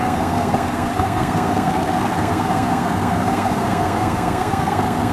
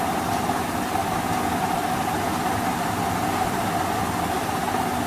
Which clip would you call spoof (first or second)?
first